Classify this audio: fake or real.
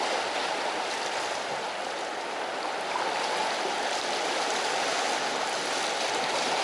real